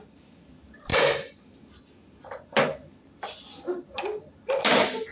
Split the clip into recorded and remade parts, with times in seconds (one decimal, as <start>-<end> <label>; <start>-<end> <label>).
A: 0.0-5.1 recorded